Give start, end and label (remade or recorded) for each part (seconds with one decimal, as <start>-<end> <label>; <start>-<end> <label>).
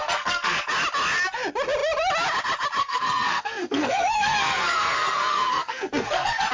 0.0-0.7 remade; 0.7-2.8 recorded; 2.8-6.5 remade